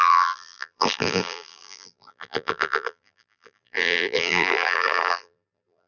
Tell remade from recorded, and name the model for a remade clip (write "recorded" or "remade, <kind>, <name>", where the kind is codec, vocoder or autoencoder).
remade, vocoder, BigVGAN v2